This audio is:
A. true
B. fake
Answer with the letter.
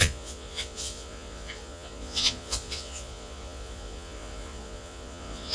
B